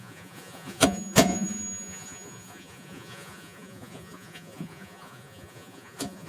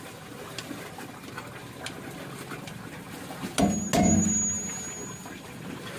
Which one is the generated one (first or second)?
first